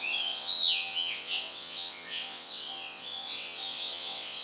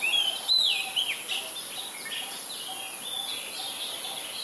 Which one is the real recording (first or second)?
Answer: second